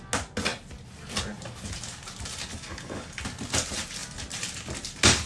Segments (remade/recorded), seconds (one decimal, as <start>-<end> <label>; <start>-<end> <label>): 0.0-2.5 recorded; 2.5-3.2 remade; 3.2-5.3 recorded

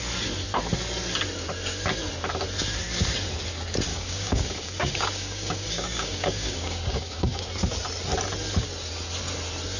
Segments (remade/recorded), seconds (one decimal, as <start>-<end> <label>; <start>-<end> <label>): 0.0-3.9 recorded; 3.9-7.4 remade; 7.4-9.8 recorded

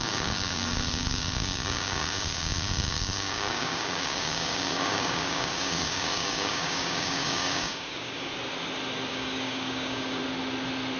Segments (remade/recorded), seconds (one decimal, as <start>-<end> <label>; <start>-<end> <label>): 0.0-8.3 remade; 8.3-9.1 recorded; 9.1-10.2 remade; 10.2-11.0 recorded

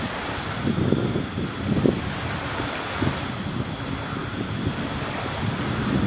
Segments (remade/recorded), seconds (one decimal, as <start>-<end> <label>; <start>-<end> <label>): 0.0-6.1 recorded

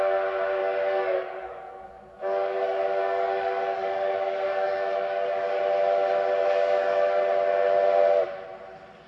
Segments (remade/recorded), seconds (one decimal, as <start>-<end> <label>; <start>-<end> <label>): 0.0-0.6 recorded; 0.6-5.6 remade; 5.6-6.4 recorded; 6.4-7.2 remade; 7.2-9.1 recorded

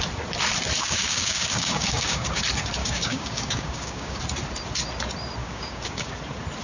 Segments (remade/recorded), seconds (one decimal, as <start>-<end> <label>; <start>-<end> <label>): 0.0-0.8 recorded; 0.8-2.4 remade; 2.4-2.8 recorded; 2.8-4.2 remade; 4.2-5.4 recorded; 5.4-6.1 remade; 6.1-6.6 recorded

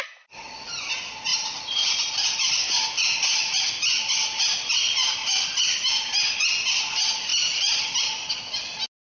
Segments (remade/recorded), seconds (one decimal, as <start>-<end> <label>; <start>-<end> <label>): 0.0-9.2 recorded

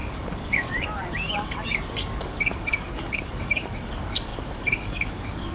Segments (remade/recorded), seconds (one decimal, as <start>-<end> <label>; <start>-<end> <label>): 0.0-5.5 remade